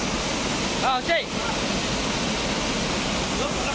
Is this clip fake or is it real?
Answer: real